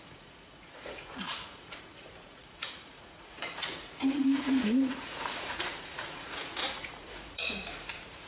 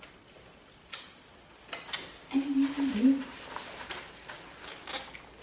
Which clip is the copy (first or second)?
first